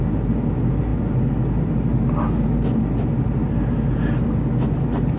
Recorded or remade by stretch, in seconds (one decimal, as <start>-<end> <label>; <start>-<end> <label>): 0.0-5.2 recorded